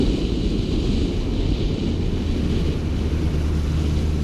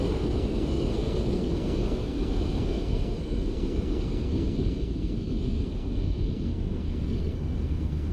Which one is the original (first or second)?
first